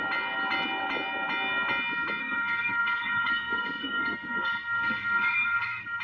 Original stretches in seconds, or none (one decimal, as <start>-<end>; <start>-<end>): 0.0-2.2